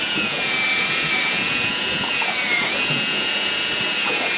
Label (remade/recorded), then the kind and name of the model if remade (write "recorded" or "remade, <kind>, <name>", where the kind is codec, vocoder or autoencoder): remade, vocoder, Vocos